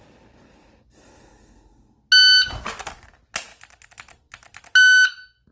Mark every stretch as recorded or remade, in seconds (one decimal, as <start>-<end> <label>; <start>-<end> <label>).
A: 0.0-5.5 recorded